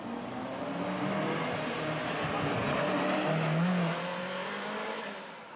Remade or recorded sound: recorded